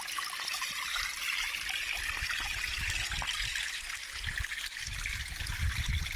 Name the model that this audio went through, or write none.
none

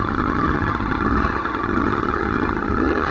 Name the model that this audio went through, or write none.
vocoder, HiFi-GAN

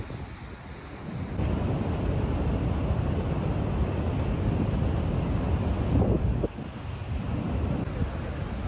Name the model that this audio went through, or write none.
none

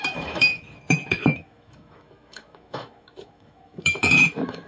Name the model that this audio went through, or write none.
autoencoder, DAC-VAE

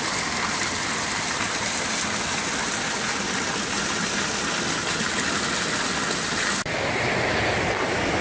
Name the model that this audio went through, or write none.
none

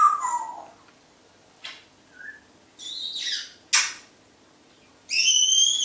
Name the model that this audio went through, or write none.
none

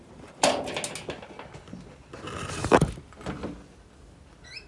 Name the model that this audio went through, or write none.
none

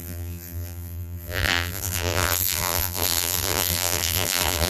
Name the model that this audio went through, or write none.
vocoder, BigVGAN v2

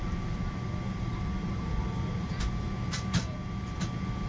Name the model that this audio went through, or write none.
none